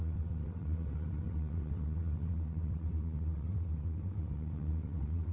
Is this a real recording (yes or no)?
no